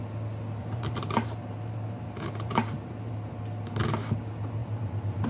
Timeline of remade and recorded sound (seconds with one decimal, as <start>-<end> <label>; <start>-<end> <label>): 0.0-0.6 recorded; 0.6-3.1 remade; 3.1-4.6 recorded; 4.6-5.3 remade